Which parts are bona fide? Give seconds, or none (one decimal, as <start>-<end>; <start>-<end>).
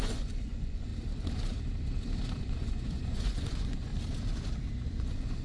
0.9-2.4; 3.9-4.7